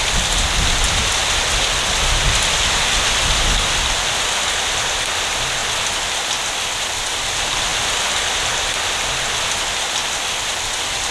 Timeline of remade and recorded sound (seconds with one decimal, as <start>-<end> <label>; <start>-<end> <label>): 0.0-11.1 recorded

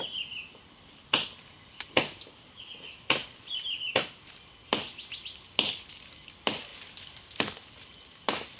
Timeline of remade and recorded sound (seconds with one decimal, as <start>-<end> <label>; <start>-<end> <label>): 0.0-3.2 recorded; 3.2-3.8 remade; 3.8-8.6 recorded

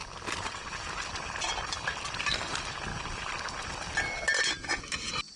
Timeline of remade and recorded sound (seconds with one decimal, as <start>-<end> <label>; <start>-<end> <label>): 0.0-2.9 recorded; 2.9-3.9 remade; 3.9-5.4 recorded

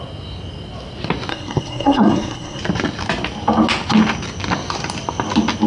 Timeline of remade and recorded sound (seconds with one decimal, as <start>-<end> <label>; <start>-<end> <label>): 0.0-1.3 recorded; 1.3-2.6 remade; 2.6-5.7 recorded

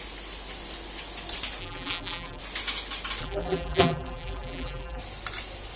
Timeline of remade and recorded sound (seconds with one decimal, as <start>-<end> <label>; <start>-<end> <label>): 0.0-1.6 recorded; 1.6-2.4 remade; 2.4-3.2 recorded; 3.2-5.0 remade; 5.0-5.8 recorded

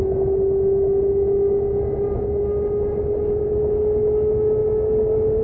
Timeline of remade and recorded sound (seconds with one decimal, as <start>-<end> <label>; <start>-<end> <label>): 0.0-5.4 recorded